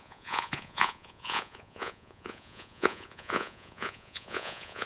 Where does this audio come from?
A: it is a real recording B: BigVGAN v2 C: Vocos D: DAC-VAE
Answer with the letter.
C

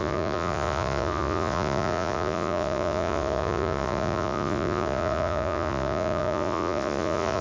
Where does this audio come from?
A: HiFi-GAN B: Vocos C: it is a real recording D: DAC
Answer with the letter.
B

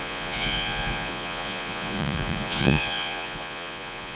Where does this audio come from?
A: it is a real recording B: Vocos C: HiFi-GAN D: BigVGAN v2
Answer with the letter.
B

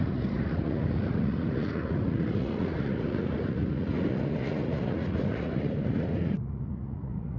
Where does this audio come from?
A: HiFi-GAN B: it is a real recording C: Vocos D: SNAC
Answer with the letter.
C